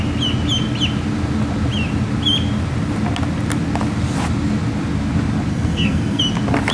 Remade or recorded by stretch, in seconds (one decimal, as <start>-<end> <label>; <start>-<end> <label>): 0.0-5.5 recorded; 5.5-6.2 remade; 6.2-6.7 recorded